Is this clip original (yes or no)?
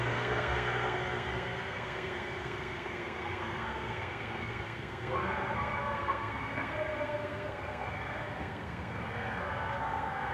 no